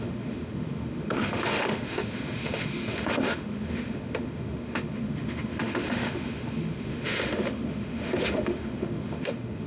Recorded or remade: remade